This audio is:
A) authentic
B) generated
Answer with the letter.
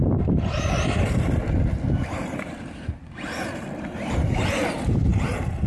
A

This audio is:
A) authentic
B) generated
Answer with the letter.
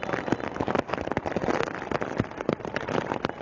A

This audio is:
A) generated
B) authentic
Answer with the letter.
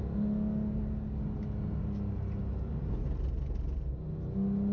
B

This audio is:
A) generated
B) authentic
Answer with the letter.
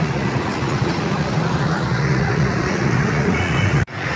A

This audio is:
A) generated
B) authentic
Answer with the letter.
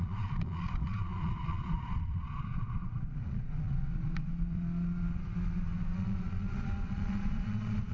A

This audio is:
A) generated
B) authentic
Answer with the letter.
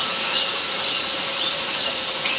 A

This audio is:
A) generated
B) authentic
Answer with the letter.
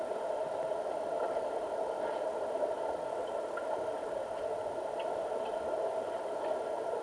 B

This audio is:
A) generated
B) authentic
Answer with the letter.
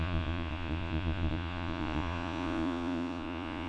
A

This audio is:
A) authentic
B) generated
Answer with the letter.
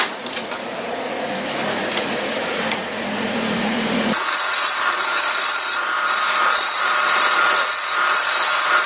B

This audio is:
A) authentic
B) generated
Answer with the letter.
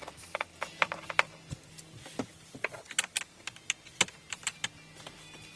A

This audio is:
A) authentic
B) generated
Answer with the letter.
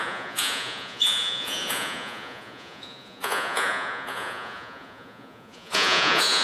B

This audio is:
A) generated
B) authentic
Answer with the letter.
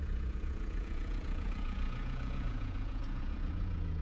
A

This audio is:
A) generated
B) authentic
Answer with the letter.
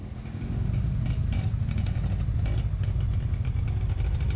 B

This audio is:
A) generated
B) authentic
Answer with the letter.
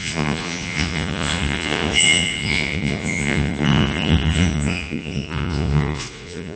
A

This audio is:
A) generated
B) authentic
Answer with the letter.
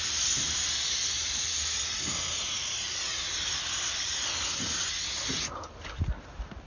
B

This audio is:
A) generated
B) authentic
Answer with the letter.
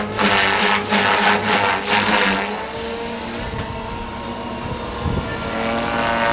B